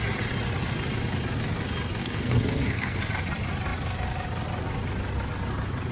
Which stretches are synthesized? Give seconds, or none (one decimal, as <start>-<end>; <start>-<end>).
2.0-3.0